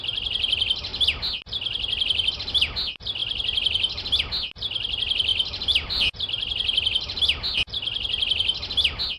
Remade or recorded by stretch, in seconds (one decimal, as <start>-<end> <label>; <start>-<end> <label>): 0.0-3.2 recorded; 3.2-4.2 remade; 4.2-5.3 recorded; 5.3-7.2 remade; 7.2-9.2 recorded